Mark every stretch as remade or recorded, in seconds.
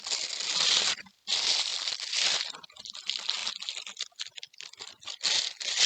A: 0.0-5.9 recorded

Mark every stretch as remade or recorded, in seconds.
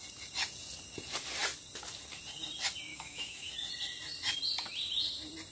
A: 0.0-2.9 recorded; 2.9-3.5 remade; 3.5-5.5 recorded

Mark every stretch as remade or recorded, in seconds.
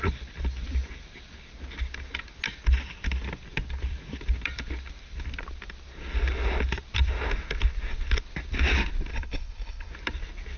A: 0.0-9.1 recorded; 9.1-9.9 remade; 9.9-10.6 recorded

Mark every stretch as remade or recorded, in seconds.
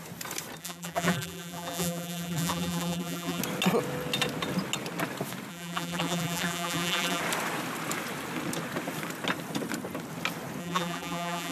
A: 0.0-0.6 recorded; 0.6-3.4 remade; 3.4-5.5 recorded; 5.5-7.2 remade; 7.2-10.6 recorded; 10.6-11.5 remade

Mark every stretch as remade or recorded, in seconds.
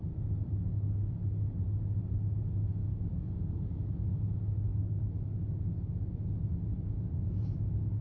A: 0.0-2.8 recorded; 2.8-3.9 remade; 3.9-4.7 recorded; 4.7-5.2 remade; 5.2-8.0 recorded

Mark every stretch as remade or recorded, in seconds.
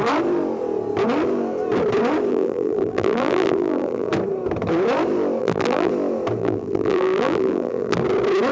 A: 0.0-2.3 recorded; 2.3-4.1 remade; 4.1-5.4 recorded; 5.4-5.9 remade; 5.9-6.4 recorded; 6.4-8.0 remade; 8.0-8.5 recorded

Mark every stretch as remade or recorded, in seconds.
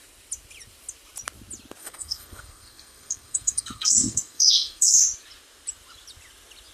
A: 0.0-1.8 recorded; 1.8-5.0 remade; 5.0-6.7 recorded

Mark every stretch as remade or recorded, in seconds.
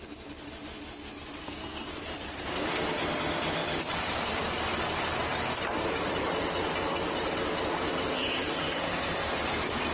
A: 0.0-1.4 recorded; 1.4-1.9 remade; 1.9-9.9 recorded